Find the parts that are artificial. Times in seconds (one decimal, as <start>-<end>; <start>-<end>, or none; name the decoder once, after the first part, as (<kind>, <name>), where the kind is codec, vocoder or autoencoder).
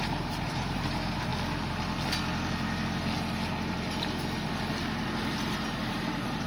0.0-1.3 (vocoder, BigVGAN v2); 5.2-6.5